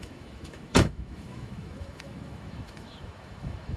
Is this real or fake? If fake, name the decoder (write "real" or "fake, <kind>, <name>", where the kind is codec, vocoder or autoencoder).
fake, autoencoder, DAC-VAE